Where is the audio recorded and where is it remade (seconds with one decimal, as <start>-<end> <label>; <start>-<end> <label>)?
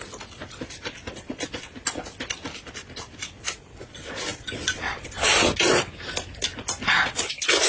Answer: 0.0-7.7 recorded